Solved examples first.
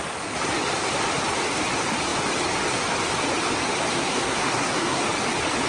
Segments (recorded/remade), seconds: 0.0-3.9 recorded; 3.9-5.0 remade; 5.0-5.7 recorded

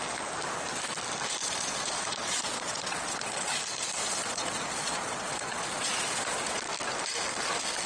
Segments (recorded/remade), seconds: 0.0-1.4 recorded; 1.4-3.6 remade; 3.6-4.0 recorded; 4.0-6.6 remade; 6.6-7.9 recorded

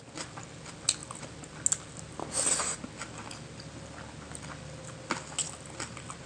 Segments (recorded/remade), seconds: 0.0-6.3 recorded

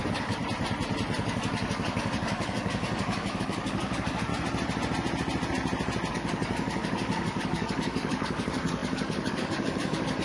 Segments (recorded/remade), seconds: 0.0-0.4 remade; 0.4-1.2 recorded; 1.2-4.3 remade; 4.3-6.1 recorded; 6.1-10.2 remade

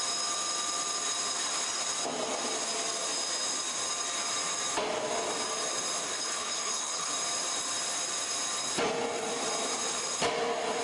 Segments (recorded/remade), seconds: 0.0-6.0 recorded; 6.0-7.1 remade; 7.1-10.8 recorded

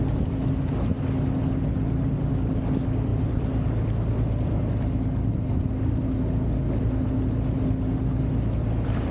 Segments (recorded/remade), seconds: 0.0-9.1 recorded